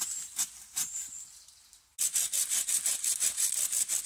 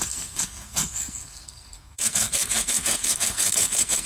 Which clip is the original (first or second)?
first